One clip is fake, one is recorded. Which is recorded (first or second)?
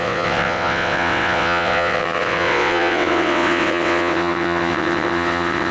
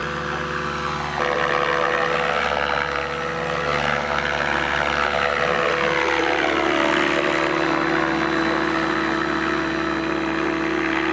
second